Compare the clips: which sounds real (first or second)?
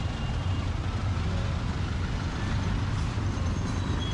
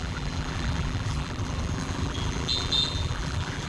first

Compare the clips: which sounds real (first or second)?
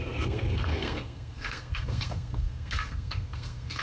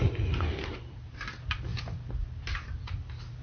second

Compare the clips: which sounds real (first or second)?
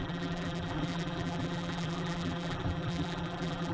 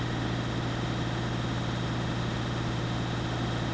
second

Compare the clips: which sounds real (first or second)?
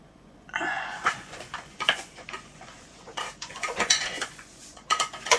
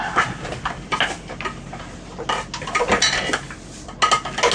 second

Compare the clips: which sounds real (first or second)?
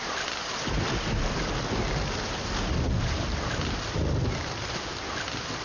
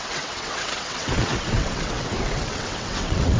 first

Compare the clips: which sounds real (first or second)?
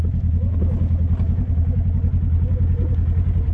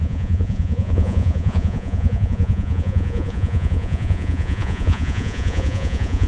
first